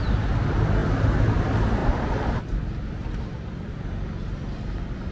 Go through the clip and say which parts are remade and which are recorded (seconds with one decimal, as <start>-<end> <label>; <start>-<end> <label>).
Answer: 0.0-1.8 recorded; 1.8-3.7 remade; 3.7-5.1 recorded